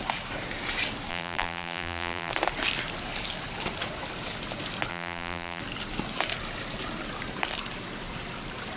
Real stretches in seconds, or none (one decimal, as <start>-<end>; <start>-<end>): 0.0-1.1; 2.3-4.9; 5.6-8.8